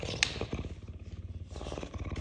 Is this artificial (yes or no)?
no